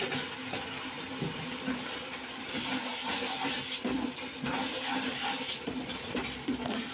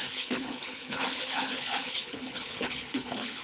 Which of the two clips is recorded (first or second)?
first